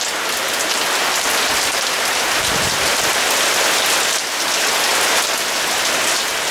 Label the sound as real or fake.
real